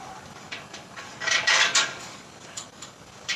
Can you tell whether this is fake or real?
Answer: fake